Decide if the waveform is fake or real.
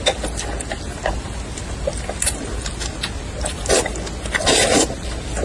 real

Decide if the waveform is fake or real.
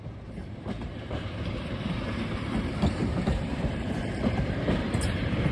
fake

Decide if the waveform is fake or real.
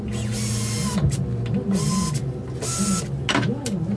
real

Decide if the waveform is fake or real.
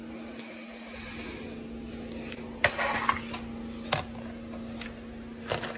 real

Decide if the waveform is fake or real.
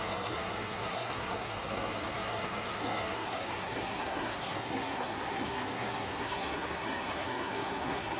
fake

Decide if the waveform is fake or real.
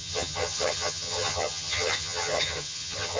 fake